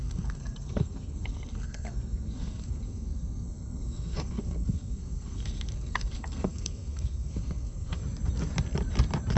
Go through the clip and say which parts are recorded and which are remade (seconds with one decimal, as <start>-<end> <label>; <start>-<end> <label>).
0.0-8.0 remade; 8.0-9.4 recorded